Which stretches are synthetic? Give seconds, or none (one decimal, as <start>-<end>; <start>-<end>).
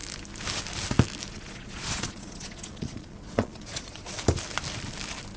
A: 1.3-4.1